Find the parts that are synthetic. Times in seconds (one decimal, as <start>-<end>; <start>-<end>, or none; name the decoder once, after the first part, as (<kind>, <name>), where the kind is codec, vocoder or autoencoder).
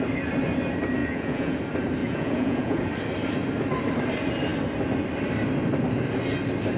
1.0-1.6 (vocoder, Vocos); 2.0-2.8